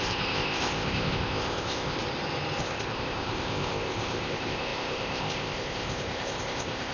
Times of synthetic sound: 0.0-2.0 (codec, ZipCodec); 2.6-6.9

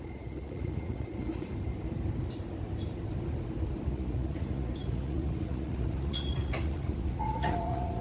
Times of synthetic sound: 0.0-1.5 (vocoder, Vocos); 3.9-8.0

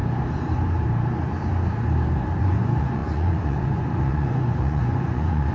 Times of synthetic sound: 2.4-5.5 (vocoder, Vocos)